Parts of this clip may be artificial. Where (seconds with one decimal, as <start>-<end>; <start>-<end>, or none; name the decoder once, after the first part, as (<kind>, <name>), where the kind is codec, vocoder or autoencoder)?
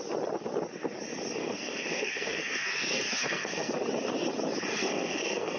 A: 1.4-3.7 (codec, SNAC); 4.7-5.6